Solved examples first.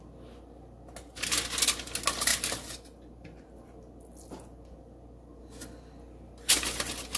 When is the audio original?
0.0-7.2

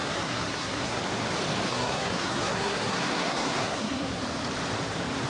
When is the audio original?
1.0-1.7; 4.2-5.3

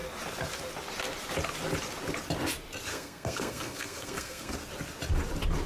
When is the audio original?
0.0-2.9; 4.5-5.7